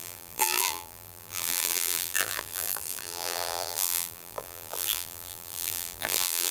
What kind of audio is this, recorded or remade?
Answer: remade